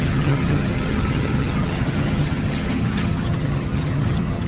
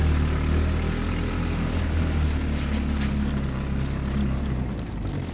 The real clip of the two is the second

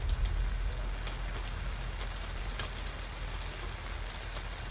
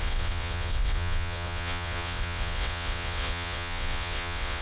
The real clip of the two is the first